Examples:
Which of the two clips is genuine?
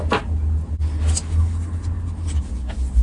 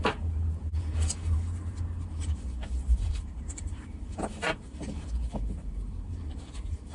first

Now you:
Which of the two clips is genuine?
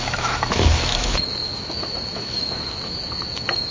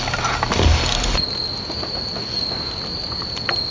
second